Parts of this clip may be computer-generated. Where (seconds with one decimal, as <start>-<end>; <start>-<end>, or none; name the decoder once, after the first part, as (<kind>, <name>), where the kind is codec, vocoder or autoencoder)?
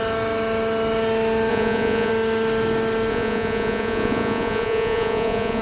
1.5-2.1 (vocoder, Vocos); 3.1-5.6